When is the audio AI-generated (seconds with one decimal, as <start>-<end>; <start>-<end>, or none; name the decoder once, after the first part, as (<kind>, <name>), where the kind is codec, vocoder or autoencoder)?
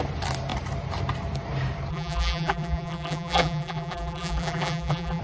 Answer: 1.9-5.2 (vocoder, BigVGAN v2)